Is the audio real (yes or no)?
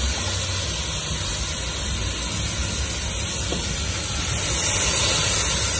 yes